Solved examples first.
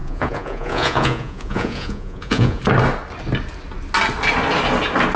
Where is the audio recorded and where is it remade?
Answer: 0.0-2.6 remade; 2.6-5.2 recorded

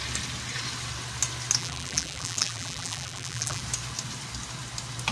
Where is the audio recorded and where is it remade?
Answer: 0.0-1.6 recorded; 1.6-3.6 remade; 3.6-5.1 recorded